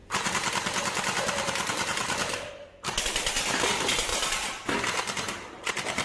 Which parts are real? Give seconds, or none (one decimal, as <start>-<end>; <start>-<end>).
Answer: 2.5-4.1; 4.8-6.0